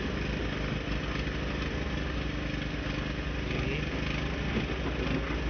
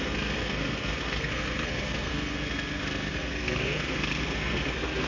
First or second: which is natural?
first